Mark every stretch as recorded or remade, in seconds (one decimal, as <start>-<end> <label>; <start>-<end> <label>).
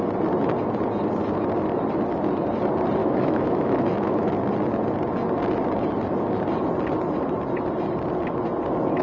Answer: 0.0-3.0 recorded; 3.0-4.3 remade; 4.3-9.0 recorded